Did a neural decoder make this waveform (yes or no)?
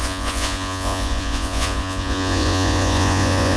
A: yes